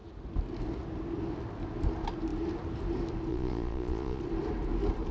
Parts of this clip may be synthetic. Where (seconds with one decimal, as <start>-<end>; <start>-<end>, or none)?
3.3-4.2